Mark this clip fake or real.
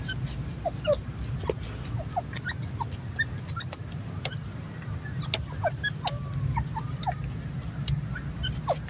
real